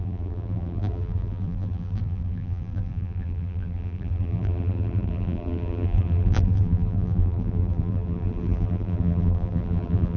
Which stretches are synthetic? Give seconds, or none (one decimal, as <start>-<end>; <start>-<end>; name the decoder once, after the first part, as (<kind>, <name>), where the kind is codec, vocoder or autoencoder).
0.0-10.2 (vocoder, BigVGAN v2)